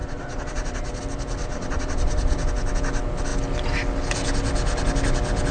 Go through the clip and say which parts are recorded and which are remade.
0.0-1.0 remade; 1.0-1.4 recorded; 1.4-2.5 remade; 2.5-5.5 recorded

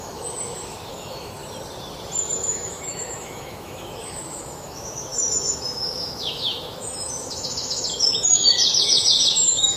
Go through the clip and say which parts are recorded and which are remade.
0.0-1.4 remade; 1.4-2.2 recorded; 2.2-9.8 remade

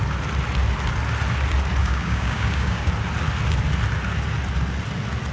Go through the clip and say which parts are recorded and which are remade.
0.0-1.8 recorded; 1.8-2.9 remade; 2.9-5.3 recorded

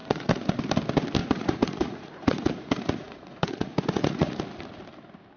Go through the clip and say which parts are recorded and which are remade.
0.0-0.6 remade; 0.6-1.2 recorded; 1.2-4.4 remade; 4.4-5.4 recorded

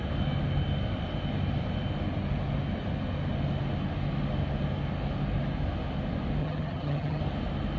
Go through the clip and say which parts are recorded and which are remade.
0.0-6.4 recorded; 6.4-7.2 remade; 7.2-7.8 recorded